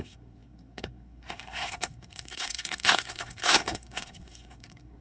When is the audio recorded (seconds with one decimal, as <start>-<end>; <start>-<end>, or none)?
none